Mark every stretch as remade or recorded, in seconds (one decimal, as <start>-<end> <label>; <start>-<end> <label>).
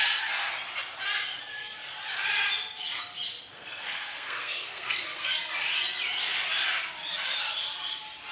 0.0-3.5 recorded; 3.5-5.4 remade; 5.4-8.3 recorded